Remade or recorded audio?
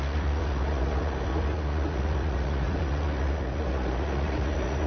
remade